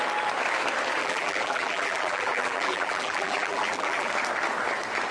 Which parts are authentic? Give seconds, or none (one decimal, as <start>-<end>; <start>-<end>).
0.0-1.0; 4.1-5.1

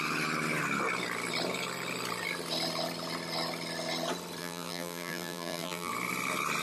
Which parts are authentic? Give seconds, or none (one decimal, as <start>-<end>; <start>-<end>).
0.0-4.4; 5.9-6.6